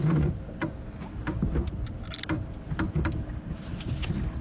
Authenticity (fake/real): real